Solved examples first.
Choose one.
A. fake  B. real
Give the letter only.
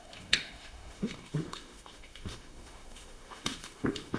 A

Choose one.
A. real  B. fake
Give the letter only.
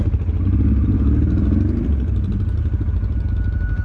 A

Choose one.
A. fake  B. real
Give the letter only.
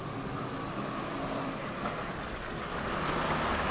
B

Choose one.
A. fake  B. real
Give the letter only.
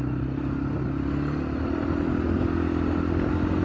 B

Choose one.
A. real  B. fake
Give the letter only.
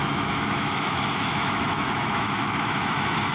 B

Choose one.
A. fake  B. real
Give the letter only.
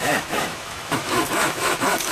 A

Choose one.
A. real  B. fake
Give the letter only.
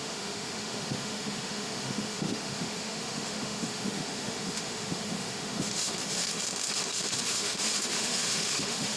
B